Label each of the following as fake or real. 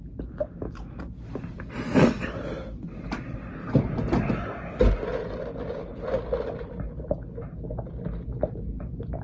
real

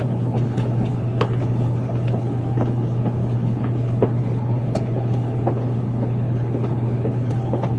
fake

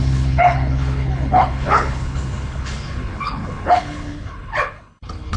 fake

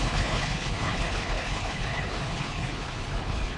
fake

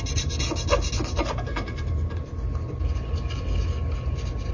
real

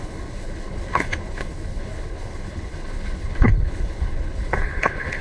fake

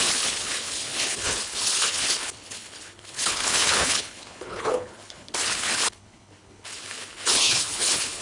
fake